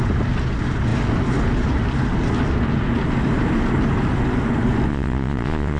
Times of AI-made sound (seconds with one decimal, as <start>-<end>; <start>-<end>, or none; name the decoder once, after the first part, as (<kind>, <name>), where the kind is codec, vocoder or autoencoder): 4.9-5.8 (vocoder, Vocos)